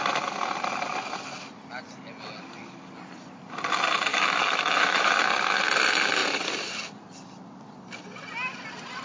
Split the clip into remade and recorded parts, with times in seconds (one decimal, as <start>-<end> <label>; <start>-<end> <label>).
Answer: 0.0-4.1 recorded; 4.1-5.2 remade; 5.2-9.0 recorded